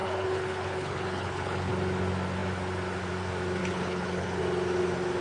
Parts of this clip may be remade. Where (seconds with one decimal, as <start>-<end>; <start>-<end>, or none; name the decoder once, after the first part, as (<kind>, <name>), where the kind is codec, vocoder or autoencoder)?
0.0-1.7 (codec, HILCodec); 3.6-4.4